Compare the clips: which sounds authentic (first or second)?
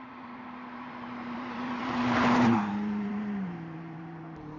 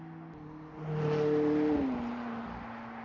second